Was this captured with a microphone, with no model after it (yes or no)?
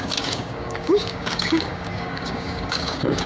no